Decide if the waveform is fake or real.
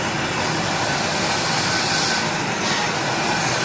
real